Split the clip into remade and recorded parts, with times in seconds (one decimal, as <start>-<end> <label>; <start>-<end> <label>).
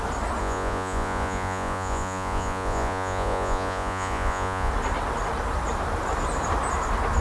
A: 0.0-0.4 recorded; 0.4-4.7 remade; 4.7-7.2 recorded